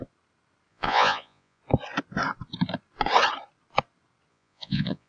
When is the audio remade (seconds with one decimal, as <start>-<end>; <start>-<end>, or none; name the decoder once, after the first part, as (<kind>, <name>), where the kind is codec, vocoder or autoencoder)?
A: 0.7-1.6 (vocoder, Vocos); 4.3-5.1